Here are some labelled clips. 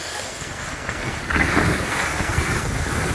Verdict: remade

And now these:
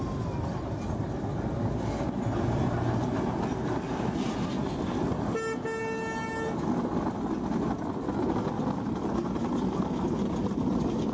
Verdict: recorded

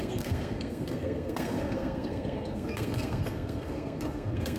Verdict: remade